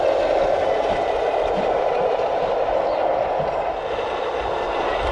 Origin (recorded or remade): recorded